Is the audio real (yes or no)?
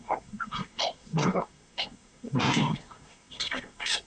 no